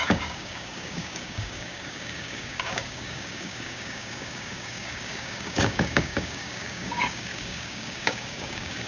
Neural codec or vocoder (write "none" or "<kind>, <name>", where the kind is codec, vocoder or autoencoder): codec, DAC